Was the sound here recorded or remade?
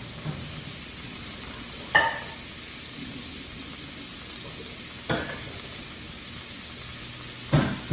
recorded